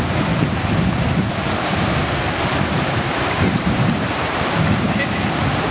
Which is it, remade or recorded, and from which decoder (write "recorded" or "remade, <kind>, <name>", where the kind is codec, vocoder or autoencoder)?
remade, vocoder, BigVGAN v2